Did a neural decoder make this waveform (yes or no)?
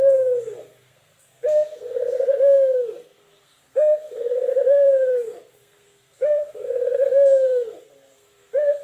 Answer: yes